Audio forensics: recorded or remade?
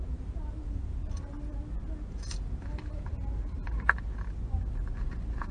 recorded